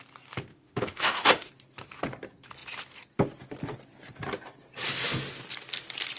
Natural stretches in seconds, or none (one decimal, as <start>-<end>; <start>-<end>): 0.0-0.5; 1.5-6.2